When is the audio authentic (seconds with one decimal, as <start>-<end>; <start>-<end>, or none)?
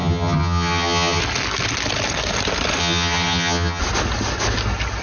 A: 1.2-2.8; 3.8-5.0